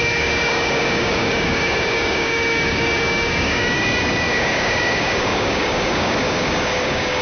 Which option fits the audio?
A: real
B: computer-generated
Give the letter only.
B